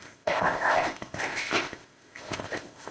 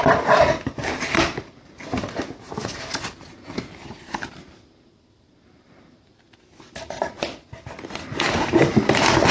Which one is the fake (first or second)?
first